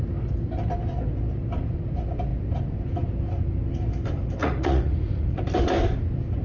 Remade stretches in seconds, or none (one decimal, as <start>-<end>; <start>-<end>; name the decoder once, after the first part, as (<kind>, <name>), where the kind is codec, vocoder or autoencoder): 4.4-5.4 (vocoder, Vocos)